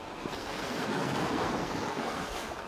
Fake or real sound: fake